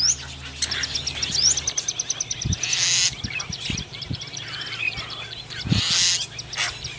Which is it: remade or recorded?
recorded